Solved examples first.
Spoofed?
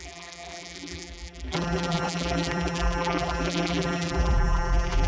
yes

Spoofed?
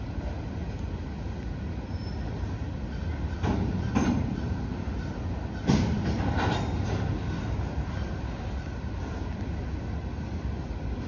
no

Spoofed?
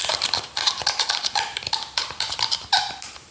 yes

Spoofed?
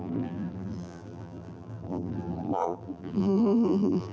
yes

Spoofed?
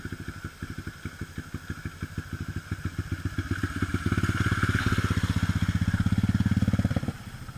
no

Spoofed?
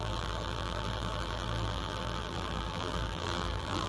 yes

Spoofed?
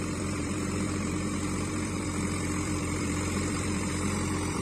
yes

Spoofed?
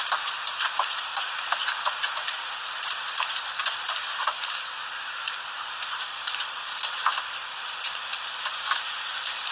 yes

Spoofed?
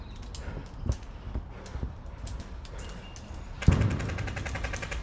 no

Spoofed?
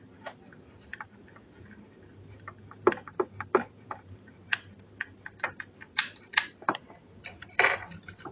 yes